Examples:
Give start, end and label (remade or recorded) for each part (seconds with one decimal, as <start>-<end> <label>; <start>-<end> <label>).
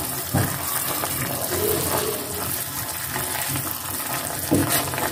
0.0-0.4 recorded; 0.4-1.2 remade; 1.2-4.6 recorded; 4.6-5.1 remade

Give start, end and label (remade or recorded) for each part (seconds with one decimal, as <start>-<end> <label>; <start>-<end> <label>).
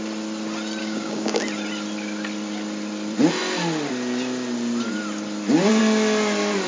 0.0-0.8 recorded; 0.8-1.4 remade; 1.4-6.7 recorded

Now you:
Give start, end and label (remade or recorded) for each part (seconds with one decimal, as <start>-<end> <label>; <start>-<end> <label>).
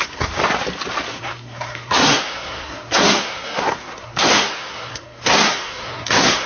0.0-0.4 remade; 0.4-1.1 recorded; 1.1-6.5 remade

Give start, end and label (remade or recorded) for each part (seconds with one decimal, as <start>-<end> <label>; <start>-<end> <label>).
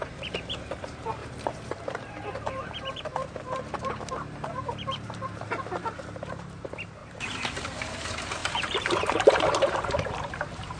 0.0-3.2 remade; 3.2-3.7 recorded; 3.7-10.8 remade